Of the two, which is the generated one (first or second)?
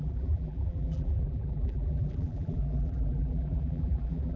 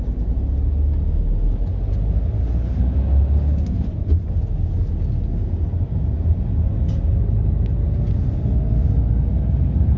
first